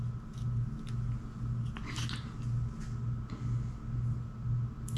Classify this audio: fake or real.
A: real